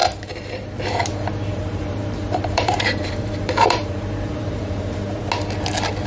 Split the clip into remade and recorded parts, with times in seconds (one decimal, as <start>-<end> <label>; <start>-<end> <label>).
0.0-0.8 remade; 0.8-1.5 recorded; 1.5-5.2 remade; 5.2-6.1 recorded

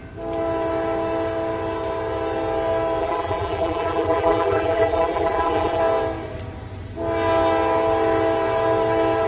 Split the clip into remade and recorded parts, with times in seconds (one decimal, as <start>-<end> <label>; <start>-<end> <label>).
0.0-3.0 recorded; 3.0-5.8 remade; 5.8-9.3 recorded